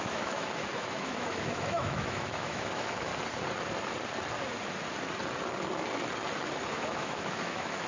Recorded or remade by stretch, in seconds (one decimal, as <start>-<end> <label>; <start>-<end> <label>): 0.0-3.1 remade; 3.1-6.7 recorded; 6.7-7.9 remade